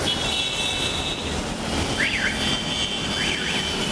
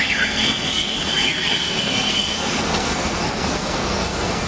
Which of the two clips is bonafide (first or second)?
first